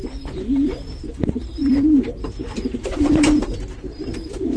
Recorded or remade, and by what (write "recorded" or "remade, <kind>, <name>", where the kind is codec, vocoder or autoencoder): remade, vocoder, BigVGAN v2